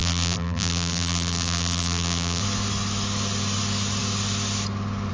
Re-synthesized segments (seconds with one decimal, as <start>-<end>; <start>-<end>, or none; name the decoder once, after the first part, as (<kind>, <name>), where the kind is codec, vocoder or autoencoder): 0.0-2.4 (vocoder, BigVGAN v2)